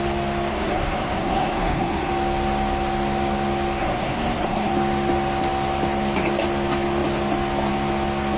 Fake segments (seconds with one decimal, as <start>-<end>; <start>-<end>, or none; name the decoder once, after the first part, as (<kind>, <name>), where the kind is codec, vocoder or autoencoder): 0.5-2.1 (codec, SNAC); 3.8-4.7